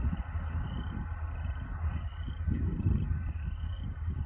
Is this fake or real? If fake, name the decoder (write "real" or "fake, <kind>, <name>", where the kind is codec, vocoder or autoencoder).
real